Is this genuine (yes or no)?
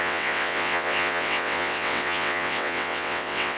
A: no